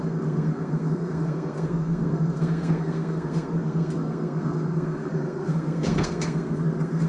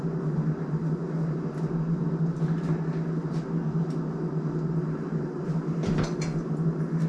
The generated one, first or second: first